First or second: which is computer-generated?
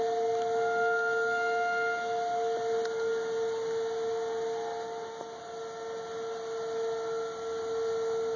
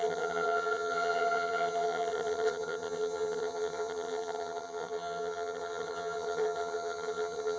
second